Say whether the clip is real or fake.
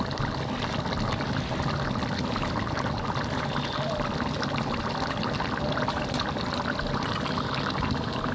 real